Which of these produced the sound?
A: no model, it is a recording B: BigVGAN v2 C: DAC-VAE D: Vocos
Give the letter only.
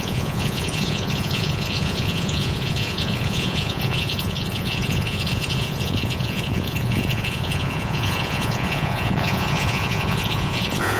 D